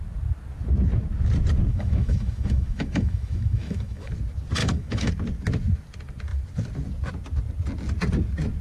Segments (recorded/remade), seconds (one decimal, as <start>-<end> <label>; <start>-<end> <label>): 0.0-1.7 recorded; 1.7-4.1 remade; 4.1-4.6 recorded; 4.6-5.1 remade; 5.1-8.6 recorded